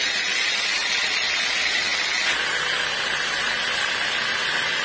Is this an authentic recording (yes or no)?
yes